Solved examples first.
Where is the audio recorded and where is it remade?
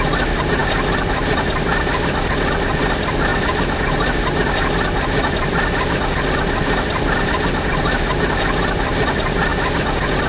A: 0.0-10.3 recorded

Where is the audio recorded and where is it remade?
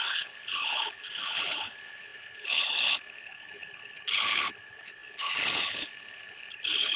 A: 0.0-7.0 remade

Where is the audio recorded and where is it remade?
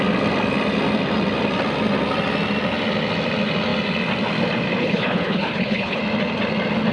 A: 0.0-4.8 recorded; 4.8-6.0 remade; 6.0-6.9 recorded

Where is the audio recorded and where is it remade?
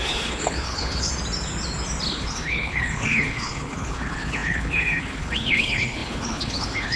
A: 0.0-1.1 remade; 1.1-2.1 recorded; 2.1-7.0 remade